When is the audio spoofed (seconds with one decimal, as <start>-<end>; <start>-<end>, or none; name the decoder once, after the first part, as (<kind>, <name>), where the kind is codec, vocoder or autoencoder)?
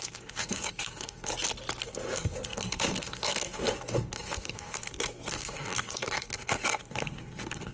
0.0-1.3 (codec, SNAC); 1.8-7.7